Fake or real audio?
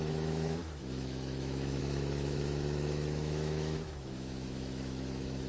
fake